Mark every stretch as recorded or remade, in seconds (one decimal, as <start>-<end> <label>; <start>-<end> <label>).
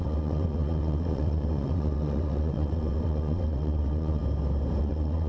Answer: 0.0-4.2 remade; 4.2-4.8 recorded; 4.8-5.3 remade